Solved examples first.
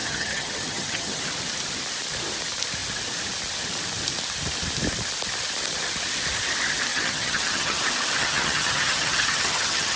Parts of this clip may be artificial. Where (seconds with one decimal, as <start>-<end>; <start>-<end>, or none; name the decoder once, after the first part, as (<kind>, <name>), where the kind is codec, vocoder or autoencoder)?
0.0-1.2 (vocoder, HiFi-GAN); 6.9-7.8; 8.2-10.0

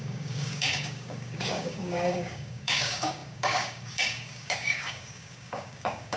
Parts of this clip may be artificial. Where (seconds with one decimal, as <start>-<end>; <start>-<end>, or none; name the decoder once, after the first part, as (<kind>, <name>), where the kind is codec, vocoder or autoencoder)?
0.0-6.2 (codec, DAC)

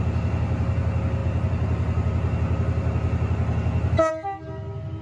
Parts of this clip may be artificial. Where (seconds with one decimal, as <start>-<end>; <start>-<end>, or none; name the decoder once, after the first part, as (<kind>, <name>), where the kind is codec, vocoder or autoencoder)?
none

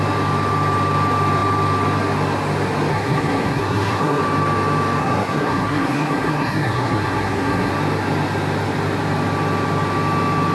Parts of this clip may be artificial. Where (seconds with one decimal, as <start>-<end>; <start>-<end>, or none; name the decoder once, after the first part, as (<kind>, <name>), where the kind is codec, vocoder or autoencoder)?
2.9-4.2 (codec, SNAC); 5.0-7.7

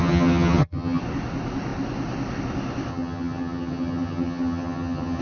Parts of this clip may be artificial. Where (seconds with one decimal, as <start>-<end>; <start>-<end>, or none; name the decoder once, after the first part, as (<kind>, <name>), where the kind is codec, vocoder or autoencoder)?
0.0-1.0 (vocoder, HiFi-GAN); 2.9-5.2